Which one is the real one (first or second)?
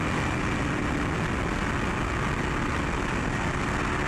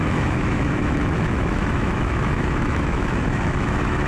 first